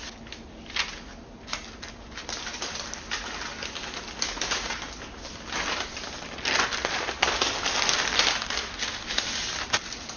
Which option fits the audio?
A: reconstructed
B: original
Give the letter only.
B